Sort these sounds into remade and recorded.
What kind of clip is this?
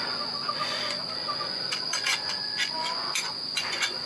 remade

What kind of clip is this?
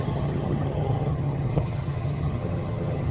remade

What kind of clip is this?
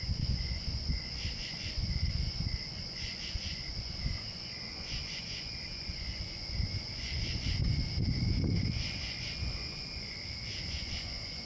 remade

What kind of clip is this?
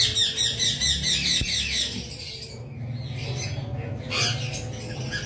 recorded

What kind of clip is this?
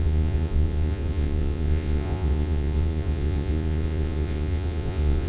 remade